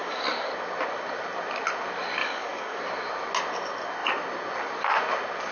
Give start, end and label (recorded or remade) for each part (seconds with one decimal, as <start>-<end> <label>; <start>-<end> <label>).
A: 0.0-0.5 remade; 0.5-2.2 recorded; 2.2-2.8 remade; 2.8-5.5 recorded